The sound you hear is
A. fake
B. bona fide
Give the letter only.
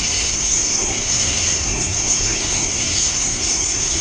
A